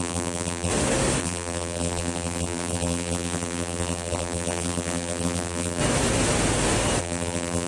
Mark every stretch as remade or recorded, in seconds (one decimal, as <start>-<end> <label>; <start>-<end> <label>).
0.0-0.7 remade; 0.7-1.2 recorded; 1.2-5.8 remade; 5.8-7.0 recorded; 7.0-7.7 remade